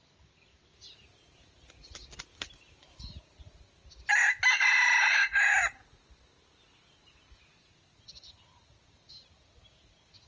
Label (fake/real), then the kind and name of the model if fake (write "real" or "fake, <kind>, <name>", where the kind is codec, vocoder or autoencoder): real